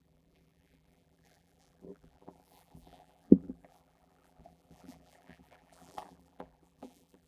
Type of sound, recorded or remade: remade